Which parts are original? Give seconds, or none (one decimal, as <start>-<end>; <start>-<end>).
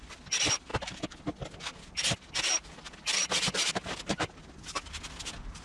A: 0.7-3.7